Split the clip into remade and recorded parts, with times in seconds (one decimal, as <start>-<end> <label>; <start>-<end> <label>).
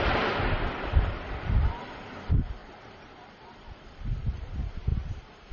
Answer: 0.0-5.5 remade